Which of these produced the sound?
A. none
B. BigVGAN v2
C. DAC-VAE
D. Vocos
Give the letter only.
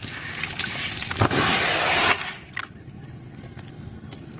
A